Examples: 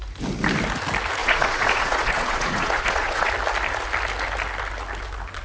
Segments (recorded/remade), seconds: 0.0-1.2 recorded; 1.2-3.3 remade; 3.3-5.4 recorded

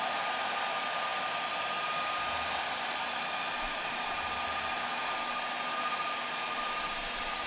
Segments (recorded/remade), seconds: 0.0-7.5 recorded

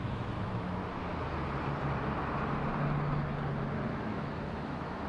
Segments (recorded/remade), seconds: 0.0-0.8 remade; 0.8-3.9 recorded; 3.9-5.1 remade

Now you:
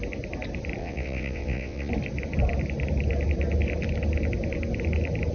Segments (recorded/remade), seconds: 0.0-0.8 recorded; 0.8-1.9 remade; 1.9-5.3 recorded

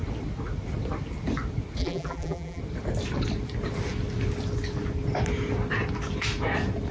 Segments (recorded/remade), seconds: 0.0-1.8 recorded; 1.8-2.6 remade; 2.6-6.9 recorded

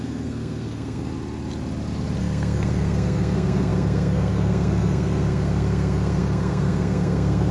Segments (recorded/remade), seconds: 0.0-1.1 remade; 1.1-2.2 recorded; 2.2-7.5 remade

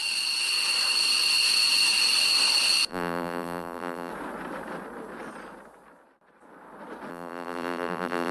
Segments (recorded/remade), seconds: 0.0-2.9 recorded; 2.9-4.1 remade; 4.1-7.1 recorded; 7.1-8.3 remade